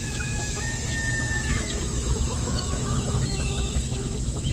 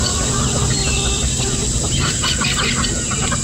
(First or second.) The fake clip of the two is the first